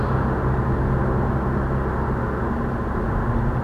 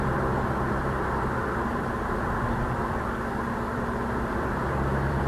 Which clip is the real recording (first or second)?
first